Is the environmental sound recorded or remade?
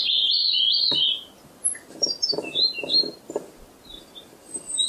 recorded